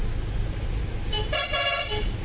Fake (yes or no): no